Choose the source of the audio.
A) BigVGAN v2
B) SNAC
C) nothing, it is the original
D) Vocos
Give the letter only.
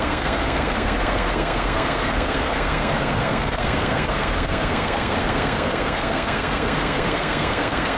B